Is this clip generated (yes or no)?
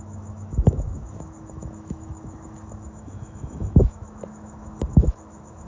yes